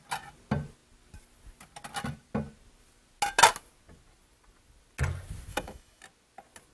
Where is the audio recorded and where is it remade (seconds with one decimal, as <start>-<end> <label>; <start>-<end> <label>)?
0.0-5.5 recorded; 5.5-6.0 remade; 6.0-6.7 recorded